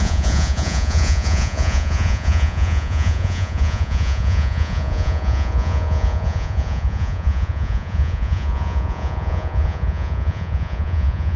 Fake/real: fake